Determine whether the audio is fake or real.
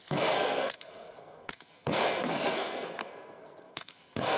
fake